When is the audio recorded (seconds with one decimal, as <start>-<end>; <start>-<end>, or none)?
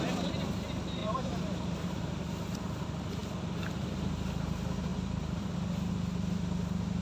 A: 0.0-1.0; 2.2-7.0